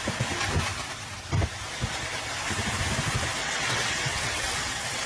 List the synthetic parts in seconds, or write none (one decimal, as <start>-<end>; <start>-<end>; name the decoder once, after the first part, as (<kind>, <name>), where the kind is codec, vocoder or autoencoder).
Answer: 3.4-5.1 (vocoder, WaveNeXt)